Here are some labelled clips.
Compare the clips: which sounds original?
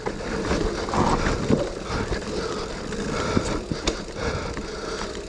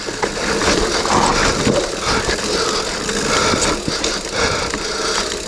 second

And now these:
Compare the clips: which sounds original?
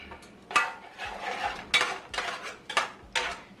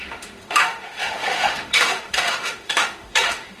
first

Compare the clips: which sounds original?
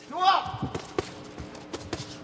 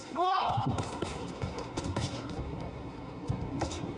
first